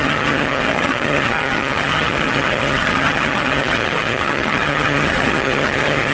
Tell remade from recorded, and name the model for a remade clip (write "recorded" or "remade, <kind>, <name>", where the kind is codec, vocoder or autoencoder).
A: remade, vocoder, HiFi-GAN